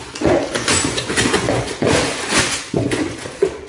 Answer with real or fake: fake